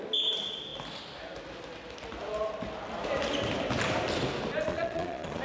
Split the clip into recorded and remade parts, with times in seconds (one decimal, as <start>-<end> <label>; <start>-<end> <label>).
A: 0.0-4.7 recorded; 4.7-5.4 remade